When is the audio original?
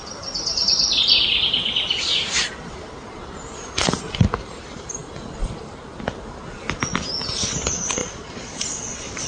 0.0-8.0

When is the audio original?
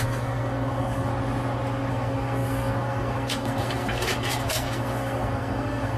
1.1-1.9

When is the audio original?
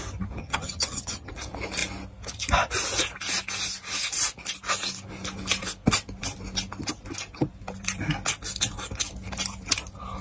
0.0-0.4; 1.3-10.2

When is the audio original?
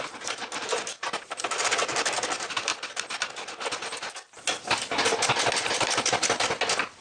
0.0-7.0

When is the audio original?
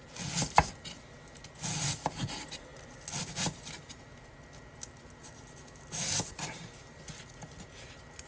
0.0-8.3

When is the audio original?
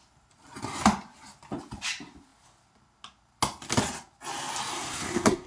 0.0-4.7